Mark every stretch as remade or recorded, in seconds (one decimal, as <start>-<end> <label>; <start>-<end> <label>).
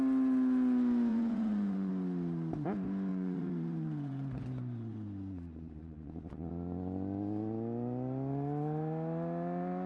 0.0-1.1 recorded; 1.1-1.9 remade; 1.9-3.1 recorded; 3.1-6.5 remade; 6.5-9.9 recorded